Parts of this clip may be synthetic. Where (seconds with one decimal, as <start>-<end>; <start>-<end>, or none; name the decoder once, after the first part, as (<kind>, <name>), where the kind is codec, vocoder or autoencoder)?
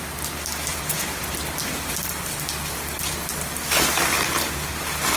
0.7-1.3 (vocoder, Vocos)